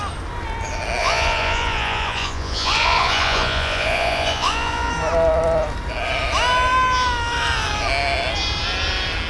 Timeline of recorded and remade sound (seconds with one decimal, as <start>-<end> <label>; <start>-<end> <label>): 0.0-1.0 recorded; 1.0-4.9 remade; 4.9-9.3 recorded